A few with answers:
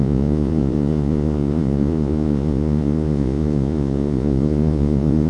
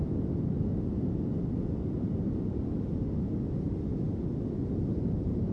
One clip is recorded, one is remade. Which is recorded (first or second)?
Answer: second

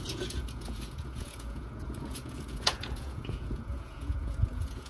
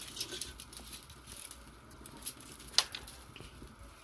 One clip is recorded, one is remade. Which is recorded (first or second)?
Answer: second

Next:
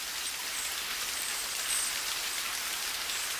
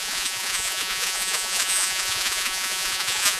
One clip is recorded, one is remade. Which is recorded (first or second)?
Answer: first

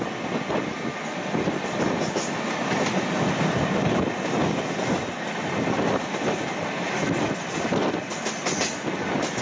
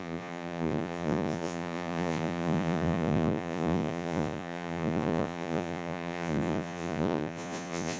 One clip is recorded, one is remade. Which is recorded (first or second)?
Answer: first